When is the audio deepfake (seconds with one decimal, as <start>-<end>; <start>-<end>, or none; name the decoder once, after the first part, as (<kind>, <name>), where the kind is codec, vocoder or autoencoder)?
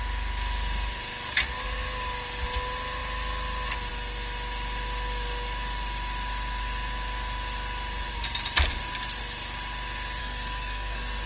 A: 10.2-11.3 (codec, SNAC)